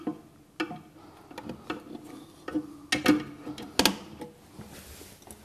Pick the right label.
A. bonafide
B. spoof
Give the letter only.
A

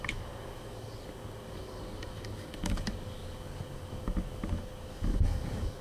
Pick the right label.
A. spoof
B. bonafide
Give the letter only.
A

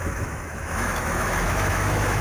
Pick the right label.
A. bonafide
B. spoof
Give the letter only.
B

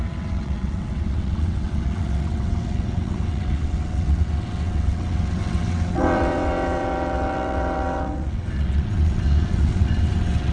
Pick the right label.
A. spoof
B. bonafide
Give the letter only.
A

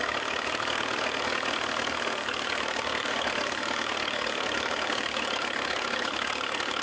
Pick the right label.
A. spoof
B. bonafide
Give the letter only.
A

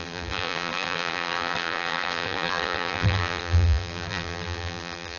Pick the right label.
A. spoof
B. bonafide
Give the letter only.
A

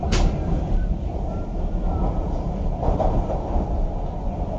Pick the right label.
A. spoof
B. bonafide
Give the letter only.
A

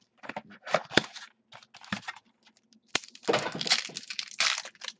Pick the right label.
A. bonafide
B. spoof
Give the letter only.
A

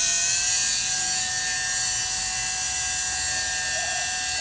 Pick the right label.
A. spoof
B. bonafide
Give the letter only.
B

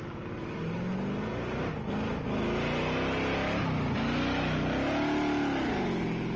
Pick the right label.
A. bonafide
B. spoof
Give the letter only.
A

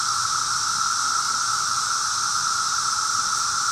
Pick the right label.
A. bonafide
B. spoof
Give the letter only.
A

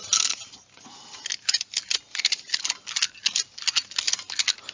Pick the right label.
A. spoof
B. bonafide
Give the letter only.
B